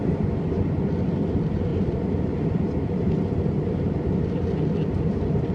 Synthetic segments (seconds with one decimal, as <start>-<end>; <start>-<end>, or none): 1.7-4.1